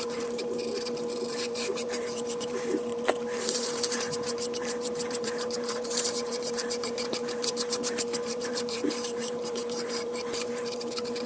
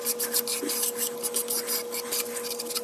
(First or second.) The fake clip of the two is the first